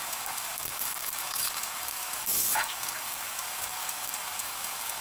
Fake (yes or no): yes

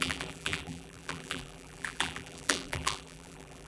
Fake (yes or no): yes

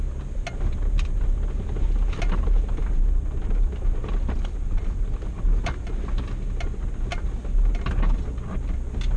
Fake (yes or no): no